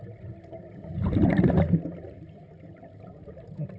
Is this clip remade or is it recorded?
recorded